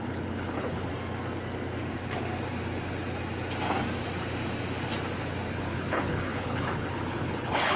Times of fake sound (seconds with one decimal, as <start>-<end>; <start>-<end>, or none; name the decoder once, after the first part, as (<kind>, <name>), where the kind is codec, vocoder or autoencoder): 0.0-0.9 (codec, HILCodec); 5.5-7.8